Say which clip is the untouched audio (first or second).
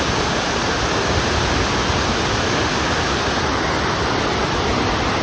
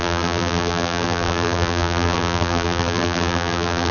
first